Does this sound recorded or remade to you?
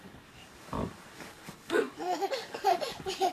remade